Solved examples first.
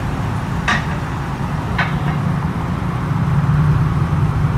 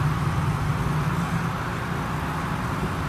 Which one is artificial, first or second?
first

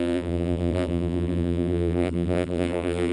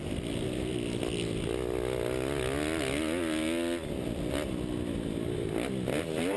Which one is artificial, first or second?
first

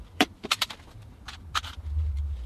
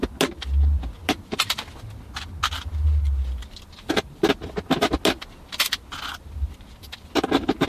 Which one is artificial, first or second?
first